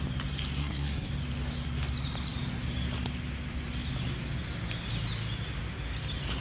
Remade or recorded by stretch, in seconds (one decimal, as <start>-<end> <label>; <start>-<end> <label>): 0.0-0.6 recorded; 0.6-1.1 remade; 1.1-6.4 recorded